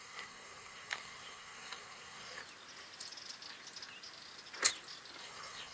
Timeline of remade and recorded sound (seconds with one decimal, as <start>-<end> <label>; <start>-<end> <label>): 0.0-2.4 remade; 2.4-5.2 recorded; 5.2-5.7 remade